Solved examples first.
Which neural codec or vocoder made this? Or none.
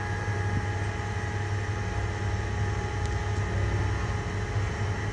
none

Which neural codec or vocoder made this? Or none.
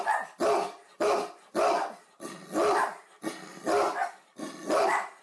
none